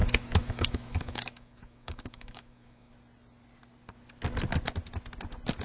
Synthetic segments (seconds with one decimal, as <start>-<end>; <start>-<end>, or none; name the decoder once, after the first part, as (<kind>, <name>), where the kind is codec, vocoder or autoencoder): 0.0-2.9 (autoencoder, DAC-VAE)